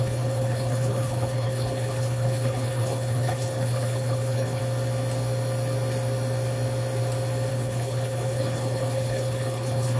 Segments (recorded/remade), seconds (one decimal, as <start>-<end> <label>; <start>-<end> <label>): 0.0-4.6 remade; 4.6-7.5 recorded; 7.5-10.0 remade